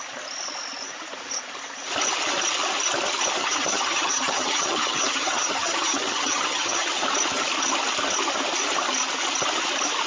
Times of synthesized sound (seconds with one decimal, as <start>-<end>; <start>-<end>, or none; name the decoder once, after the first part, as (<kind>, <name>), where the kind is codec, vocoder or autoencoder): 3.4-6.9 (vocoder, HiFi-GAN)